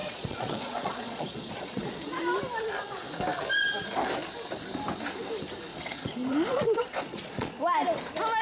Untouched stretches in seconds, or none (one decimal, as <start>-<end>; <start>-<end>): 2.2-5.7; 7.5-8.4